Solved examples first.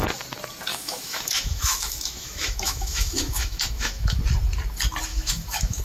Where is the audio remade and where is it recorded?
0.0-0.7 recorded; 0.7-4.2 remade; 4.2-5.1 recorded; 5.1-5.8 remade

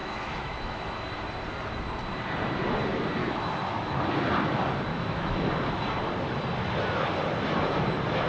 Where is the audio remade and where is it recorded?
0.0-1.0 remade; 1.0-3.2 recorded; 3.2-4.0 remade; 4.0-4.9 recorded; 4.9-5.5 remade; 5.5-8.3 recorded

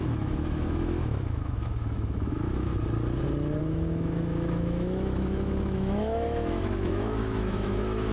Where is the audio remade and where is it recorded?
0.0-2.7 remade; 2.7-3.6 recorded; 3.6-8.1 remade

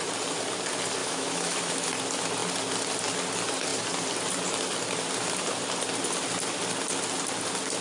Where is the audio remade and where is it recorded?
0.0-1.0 recorded; 1.0-1.9 remade; 1.9-7.8 recorded

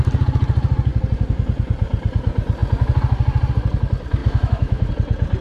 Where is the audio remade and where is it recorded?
0.0-4.2 recorded; 4.2-4.9 remade; 4.9-5.4 recorded

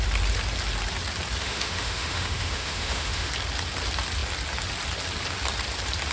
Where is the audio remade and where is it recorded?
0.0-1.4 recorded; 1.4-3.3 remade; 3.3-6.1 recorded

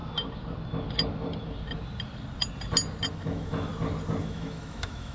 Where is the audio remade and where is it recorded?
0.0-3.1 recorded; 3.1-3.7 remade; 3.7-4.2 recorded; 4.2-5.1 remade

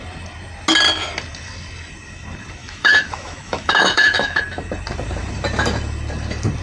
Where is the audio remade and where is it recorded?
0.0-2.6 recorded; 2.6-4.4 remade; 4.4-6.6 recorded